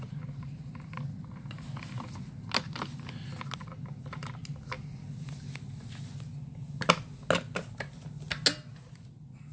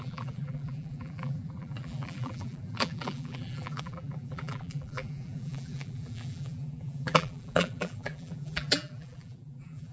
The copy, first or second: second